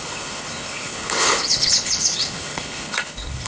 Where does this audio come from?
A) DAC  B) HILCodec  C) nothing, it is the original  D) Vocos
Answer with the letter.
B